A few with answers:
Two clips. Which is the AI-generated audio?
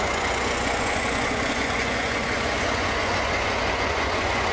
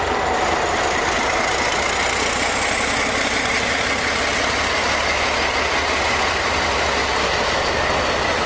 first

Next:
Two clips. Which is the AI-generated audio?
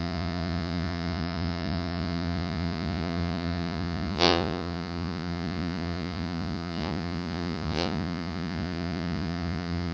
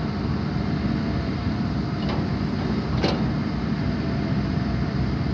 first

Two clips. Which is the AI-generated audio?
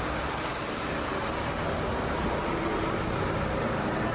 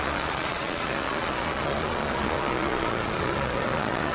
second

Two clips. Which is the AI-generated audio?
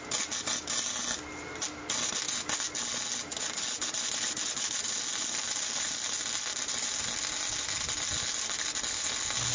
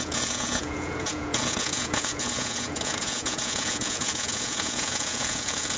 second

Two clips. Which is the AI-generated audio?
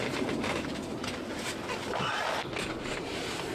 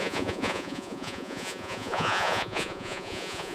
second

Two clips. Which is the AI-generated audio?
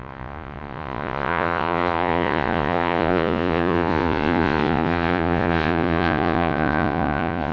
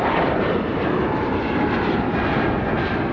first